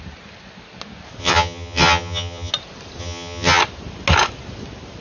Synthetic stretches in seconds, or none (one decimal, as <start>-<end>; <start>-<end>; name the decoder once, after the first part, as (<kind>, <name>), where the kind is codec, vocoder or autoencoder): 1.2-2.5 (vocoder, HiFi-GAN); 3.0-3.6